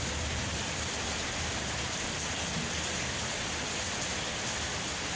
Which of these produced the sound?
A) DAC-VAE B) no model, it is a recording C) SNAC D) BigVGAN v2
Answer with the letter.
B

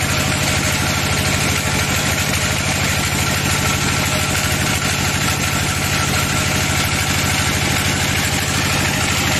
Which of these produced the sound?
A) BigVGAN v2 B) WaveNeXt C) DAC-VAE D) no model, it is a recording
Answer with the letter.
D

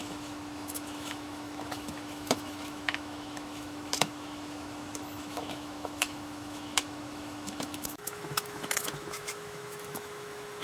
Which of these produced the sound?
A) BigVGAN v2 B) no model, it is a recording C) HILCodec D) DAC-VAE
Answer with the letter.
D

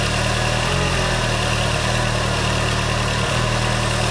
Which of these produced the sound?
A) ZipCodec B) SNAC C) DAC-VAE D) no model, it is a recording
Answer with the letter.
D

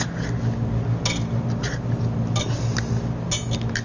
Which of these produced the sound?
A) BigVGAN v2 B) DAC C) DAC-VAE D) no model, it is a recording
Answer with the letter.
D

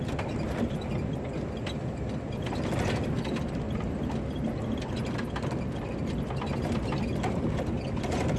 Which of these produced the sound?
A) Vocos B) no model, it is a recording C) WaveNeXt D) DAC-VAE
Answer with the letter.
B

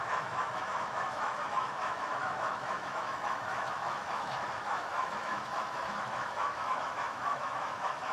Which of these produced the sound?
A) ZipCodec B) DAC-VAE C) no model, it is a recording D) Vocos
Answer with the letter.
B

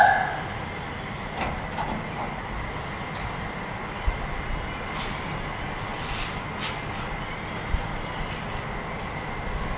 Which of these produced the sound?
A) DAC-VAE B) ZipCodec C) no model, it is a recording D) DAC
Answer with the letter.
C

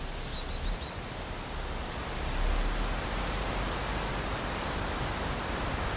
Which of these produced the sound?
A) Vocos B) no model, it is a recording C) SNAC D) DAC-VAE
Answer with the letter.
B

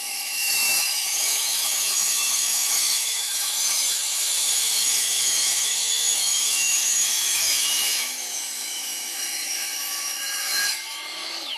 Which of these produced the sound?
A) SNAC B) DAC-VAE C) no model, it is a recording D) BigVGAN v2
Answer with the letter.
B